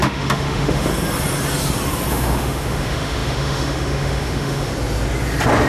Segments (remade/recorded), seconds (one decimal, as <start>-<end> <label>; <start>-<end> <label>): 0.0-0.9 remade; 0.9-2.1 recorded; 2.1-4.7 remade; 4.7-5.7 recorded

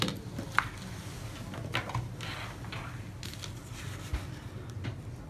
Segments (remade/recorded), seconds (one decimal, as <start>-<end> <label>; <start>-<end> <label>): 0.0-5.3 recorded

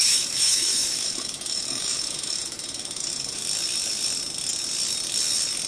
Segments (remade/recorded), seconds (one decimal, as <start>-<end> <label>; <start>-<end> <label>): 0.0-3.4 remade; 3.4-5.7 recorded

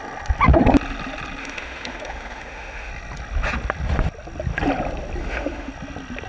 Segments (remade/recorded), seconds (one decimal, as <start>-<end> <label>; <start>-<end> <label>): 0.0-1.4 recorded; 1.4-2.9 remade; 2.9-5.2 recorded; 5.2-5.7 remade; 5.7-6.3 recorded

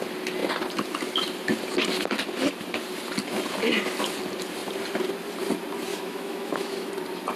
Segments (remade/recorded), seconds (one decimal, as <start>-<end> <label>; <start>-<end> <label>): 0.0-5.9 recorded; 5.9-6.9 remade; 6.9-7.4 recorded

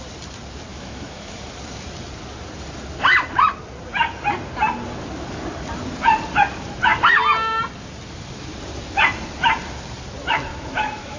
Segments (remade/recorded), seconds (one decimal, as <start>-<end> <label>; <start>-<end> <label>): 0.0-0.7 recorded; 0.7-1.4 remade; 1.4-10.5 recorded; 10.5-11.2 remade

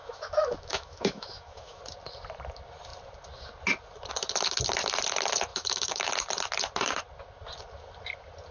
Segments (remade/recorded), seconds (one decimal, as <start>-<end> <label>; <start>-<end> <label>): 0.0-1.8 remade; 1.8-5.5 recorded; 5.5-6.1 remade; 6.1-8.5 recorded